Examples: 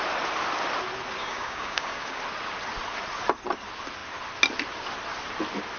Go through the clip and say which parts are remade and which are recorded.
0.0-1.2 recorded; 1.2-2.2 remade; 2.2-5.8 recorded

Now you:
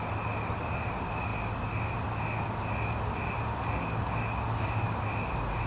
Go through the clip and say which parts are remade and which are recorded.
0.0-5.7 recorded